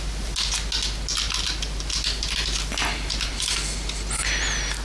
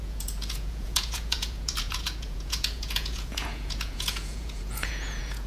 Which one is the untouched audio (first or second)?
first